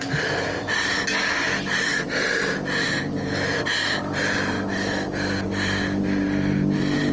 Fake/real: real